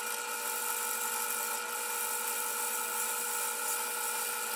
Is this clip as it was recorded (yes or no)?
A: yes